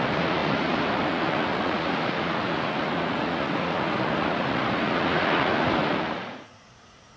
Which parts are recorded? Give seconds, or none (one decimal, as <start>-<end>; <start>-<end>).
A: none

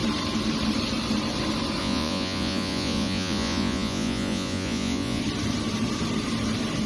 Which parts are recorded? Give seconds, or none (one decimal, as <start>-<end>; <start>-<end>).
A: 0.0-1.8; 5.2-6.9

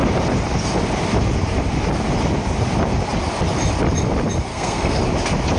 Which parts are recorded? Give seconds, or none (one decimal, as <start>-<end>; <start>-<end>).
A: 0.0-4.5; 5.0-5.6

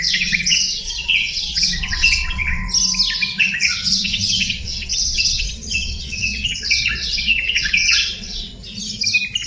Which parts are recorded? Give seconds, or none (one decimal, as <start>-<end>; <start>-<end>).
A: 2.6-3.4; 8.5-9.5

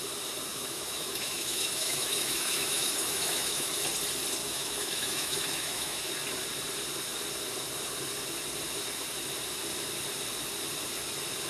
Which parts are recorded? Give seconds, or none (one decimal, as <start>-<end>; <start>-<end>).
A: 0.0-0.5; 3.7-4.4; 6.1-11.5

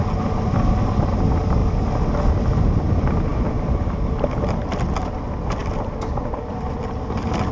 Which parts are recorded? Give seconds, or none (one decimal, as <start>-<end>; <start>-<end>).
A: 0.0-7.5

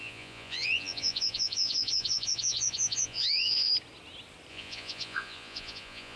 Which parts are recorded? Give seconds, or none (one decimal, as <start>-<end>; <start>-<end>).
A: 3.7-4.5